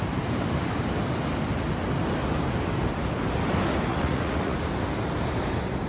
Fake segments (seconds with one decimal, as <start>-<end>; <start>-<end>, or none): 3.9-4.6

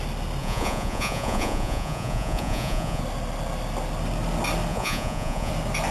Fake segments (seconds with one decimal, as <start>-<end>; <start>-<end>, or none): 0.4-3.0; 4.7-5.5